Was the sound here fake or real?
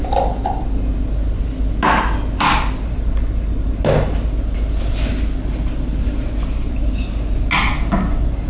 real